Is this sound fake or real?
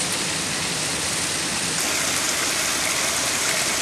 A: real